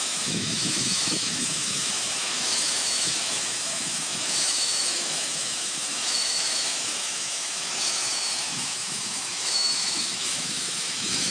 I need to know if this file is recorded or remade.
remade